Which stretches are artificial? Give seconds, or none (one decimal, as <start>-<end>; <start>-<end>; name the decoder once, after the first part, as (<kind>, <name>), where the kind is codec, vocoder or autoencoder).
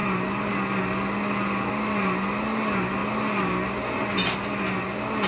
none